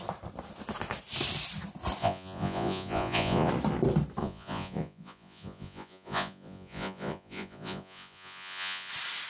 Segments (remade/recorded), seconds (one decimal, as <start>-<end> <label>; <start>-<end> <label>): 0.0-2.0 recorded; 2.0-3.5 remade; 3.5-4.2 recorded; 4.2-8.9 remade; 8.9-9.3 recorded